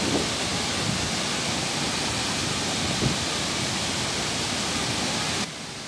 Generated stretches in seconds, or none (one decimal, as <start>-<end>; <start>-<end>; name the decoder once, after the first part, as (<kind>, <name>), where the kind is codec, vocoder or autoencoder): none